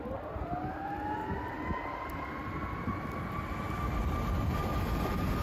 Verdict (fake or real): real